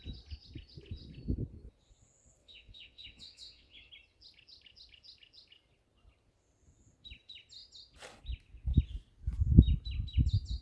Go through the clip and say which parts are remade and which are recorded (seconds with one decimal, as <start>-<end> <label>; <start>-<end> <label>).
0.0-2.4 recorded; 2.4-3.9 remade; 3.9-10.6 recorded